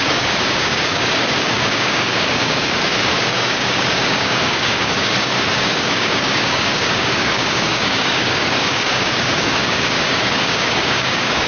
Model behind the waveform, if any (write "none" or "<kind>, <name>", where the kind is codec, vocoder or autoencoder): codec, DAC